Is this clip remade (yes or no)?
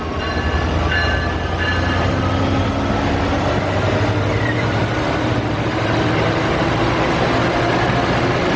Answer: no